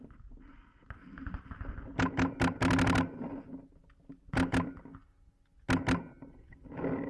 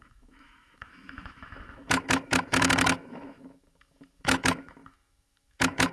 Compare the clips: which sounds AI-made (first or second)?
second